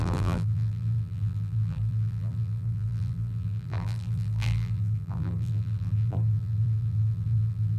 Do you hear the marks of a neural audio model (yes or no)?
yes